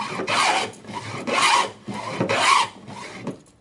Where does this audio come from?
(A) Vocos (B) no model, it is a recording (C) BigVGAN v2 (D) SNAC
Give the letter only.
B